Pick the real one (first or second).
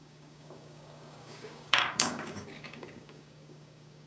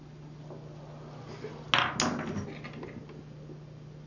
second